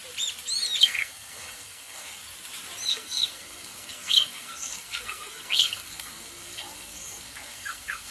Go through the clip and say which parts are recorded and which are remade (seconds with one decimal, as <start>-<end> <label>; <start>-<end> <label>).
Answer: 0.0-0.8 recorded; 0.8-2.2 remade; 2.2-2.9 recorded; 2.9-8.1 remade